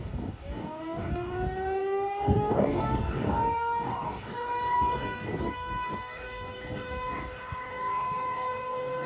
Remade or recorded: remade